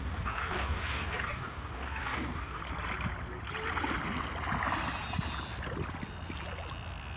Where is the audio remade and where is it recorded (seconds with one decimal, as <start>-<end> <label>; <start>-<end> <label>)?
0.0-2.6 remade; 2.6-7.2 recorded